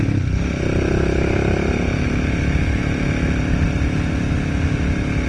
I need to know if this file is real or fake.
real